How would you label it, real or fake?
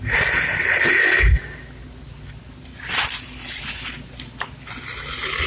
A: real